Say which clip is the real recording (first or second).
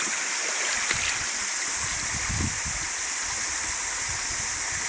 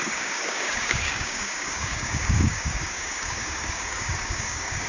first